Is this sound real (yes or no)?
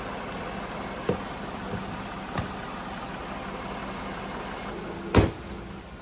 yes